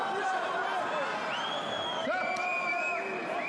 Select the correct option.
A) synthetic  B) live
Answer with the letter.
B